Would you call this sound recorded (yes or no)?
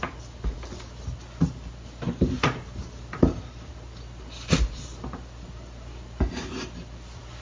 yes